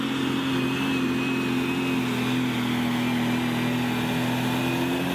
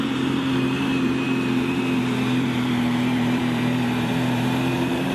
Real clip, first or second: first